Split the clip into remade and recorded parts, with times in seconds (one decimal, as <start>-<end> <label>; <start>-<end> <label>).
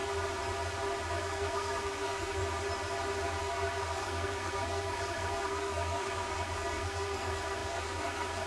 0.0-1.1 recorded; 1.1-2.4 remade; 2.4-3.4 recorded; 3.4-8.5 remade